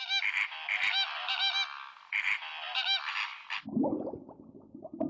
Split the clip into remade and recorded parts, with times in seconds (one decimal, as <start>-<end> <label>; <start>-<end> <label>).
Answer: 0.0-5.1 recorded